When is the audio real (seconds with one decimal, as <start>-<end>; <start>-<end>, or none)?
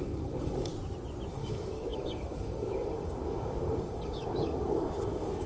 0.7-1.3